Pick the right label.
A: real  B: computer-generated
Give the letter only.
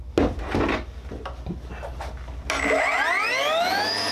A